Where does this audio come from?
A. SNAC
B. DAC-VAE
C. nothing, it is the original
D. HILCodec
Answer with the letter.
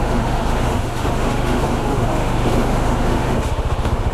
B